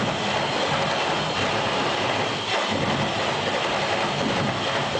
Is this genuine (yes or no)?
yes